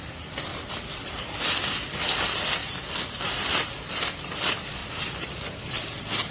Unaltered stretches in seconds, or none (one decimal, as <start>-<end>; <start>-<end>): 0.0-0.5; 1.0-2.6; 3.2-4.8; 5.8-6.3